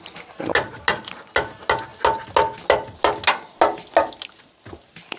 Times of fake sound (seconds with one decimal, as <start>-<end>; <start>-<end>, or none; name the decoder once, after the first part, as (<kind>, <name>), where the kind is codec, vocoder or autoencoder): none